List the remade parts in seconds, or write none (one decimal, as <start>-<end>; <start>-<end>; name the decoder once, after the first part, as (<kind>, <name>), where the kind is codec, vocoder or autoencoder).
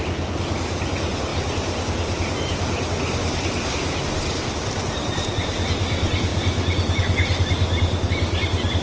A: none